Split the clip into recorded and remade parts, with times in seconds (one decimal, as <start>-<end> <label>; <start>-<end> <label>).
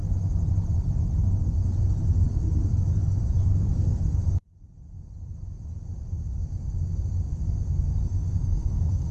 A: 0.0-3.4 recorded; 3.4-4.0 remade; 4.0-8.0 recorded; 8.0-9.1 remade